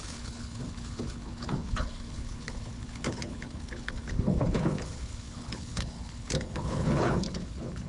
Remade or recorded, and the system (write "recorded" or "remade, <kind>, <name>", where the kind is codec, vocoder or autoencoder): remade, codec, HILCodec